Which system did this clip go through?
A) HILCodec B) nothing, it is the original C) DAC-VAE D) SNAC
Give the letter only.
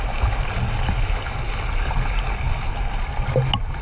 B